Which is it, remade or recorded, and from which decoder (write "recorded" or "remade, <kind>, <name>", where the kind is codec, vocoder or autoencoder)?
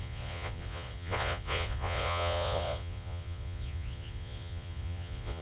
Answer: remade, vocoder, Vocos